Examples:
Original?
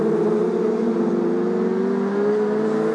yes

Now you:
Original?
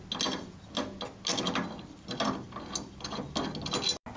yes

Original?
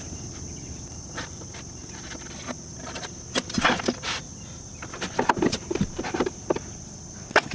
yes